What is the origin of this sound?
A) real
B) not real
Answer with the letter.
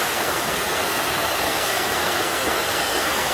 B